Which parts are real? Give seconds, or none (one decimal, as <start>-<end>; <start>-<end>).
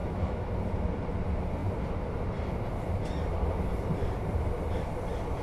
0.5-5.4